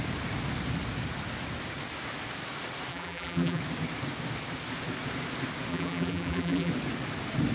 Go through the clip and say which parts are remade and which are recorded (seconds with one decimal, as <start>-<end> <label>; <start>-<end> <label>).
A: 0.0-2.9 recorded; 2.9-3.6 remade; 3.6-5.7 recorded; 5.7-6.7 remade; 6.7-7.5 recorded

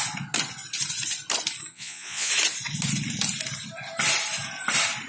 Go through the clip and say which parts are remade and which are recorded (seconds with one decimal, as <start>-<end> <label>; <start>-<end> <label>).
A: 0.0-1.7 recorded; 1.7-2.3 remade; 2.3-5.1 recorded

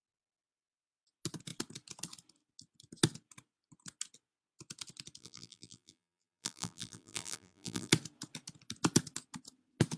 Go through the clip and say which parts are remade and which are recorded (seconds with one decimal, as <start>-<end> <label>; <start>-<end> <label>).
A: 0.0-5.2 recorded; 5.2-7.9 remade; 7.9-10.0 recorded

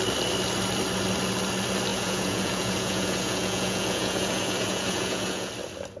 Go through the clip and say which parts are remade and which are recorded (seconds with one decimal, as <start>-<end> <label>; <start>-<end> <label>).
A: 0.0-1.9 recorded; 1.9-5.5 remade; 5.5-6.0 recorded

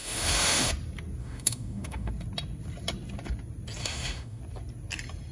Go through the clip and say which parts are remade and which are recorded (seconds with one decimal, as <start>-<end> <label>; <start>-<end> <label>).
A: 0.0-0.7 remade; 0.7-1.2 recorded; 1.2-2.1 remade; 2.1-3.8 recorded; 3.8-4.4 remade; 4.4-5.3 recorded

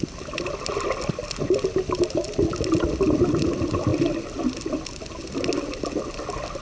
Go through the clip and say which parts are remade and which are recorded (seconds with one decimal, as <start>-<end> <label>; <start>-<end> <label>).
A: 0.0-6.6 recorded

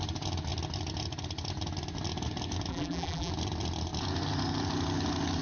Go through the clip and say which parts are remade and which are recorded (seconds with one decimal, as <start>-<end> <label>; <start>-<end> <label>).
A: 0.0-2.7 recorded; 2.7-3.3 remade; 3.3-5.4 recorded